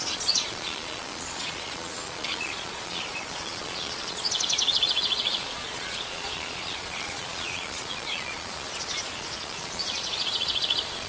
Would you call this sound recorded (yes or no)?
no